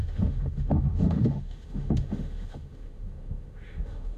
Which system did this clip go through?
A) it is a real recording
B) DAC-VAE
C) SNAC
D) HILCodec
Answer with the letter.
B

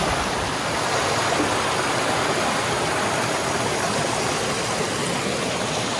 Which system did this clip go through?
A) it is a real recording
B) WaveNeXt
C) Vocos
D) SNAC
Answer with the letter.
A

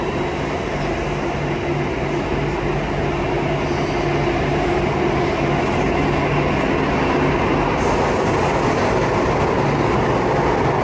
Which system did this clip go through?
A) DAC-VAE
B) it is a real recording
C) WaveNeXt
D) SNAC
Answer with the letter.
B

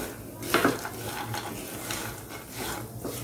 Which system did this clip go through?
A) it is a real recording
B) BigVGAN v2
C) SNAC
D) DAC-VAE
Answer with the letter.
A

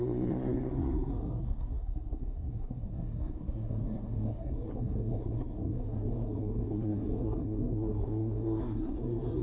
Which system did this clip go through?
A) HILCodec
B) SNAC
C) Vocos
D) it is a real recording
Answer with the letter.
B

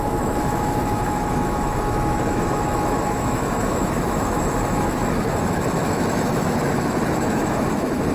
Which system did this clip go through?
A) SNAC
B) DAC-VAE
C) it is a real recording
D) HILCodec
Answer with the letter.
B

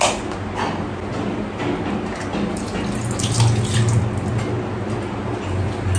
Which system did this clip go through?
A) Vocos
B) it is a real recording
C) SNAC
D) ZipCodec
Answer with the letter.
B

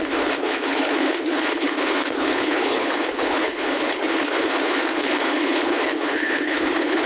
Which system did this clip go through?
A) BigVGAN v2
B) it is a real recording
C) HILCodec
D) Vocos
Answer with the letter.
C